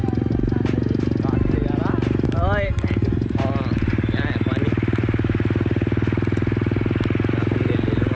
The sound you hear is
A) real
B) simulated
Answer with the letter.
A